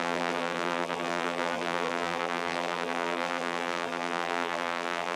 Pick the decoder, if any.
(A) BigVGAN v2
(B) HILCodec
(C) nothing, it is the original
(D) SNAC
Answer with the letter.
A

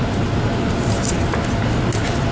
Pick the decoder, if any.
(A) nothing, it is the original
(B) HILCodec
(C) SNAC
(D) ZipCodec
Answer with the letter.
A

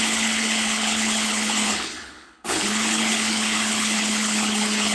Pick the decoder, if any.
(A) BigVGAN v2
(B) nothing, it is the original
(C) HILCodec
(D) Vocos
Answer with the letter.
C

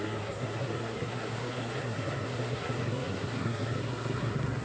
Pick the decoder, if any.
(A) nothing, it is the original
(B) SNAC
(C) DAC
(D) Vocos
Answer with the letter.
B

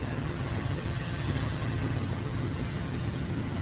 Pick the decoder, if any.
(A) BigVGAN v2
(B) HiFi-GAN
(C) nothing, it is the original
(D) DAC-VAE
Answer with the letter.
B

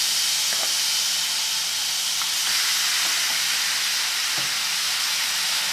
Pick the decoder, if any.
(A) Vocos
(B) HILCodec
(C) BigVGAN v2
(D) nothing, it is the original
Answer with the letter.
D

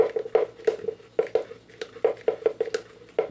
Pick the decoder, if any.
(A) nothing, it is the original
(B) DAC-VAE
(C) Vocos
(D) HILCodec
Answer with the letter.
A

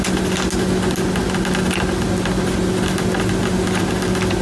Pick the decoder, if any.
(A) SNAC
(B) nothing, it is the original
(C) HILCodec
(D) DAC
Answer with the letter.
B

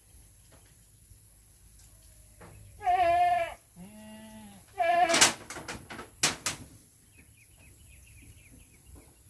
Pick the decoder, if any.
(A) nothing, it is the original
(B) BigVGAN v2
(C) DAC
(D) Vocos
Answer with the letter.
A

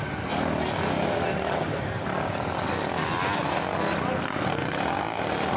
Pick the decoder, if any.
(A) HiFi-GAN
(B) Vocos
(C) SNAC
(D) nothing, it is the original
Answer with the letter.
D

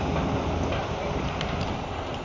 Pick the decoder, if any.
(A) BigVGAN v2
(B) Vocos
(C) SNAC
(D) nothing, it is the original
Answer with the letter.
D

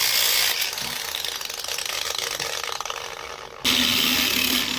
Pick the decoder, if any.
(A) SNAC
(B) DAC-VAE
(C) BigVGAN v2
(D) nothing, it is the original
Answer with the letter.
D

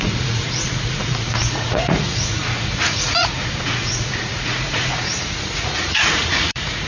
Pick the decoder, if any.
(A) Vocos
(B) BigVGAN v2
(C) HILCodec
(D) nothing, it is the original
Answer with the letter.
A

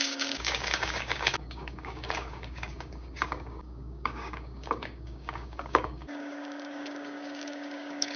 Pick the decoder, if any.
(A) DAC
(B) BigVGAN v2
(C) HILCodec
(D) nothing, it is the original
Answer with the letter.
A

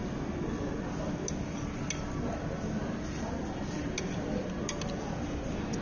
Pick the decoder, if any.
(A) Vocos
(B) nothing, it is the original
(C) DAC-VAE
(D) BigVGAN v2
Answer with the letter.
B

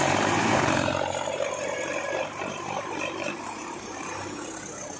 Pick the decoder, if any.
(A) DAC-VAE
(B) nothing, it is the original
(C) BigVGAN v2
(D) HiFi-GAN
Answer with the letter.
C